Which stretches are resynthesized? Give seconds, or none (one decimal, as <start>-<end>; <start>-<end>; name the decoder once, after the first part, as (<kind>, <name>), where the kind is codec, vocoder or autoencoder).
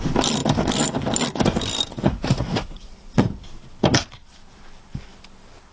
1.9-3.2 (vocoder, Vocos)